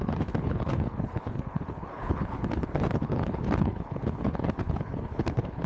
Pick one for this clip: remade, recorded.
remade